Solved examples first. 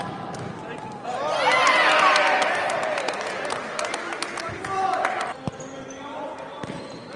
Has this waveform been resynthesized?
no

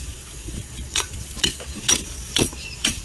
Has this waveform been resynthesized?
yes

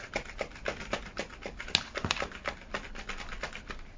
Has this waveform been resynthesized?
no